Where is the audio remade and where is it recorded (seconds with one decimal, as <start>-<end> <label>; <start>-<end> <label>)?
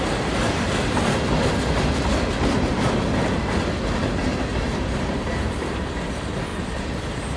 0.0-4.3 recorded; 4.3-5.9 remade; 5.9-6.5 recorded; 6.5-7.4 remade